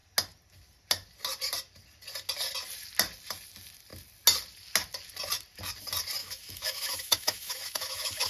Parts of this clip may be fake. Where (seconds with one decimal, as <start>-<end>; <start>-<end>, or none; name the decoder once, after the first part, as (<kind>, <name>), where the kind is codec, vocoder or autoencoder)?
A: 6.2-8.3 (autoencoder, DAC-VAE)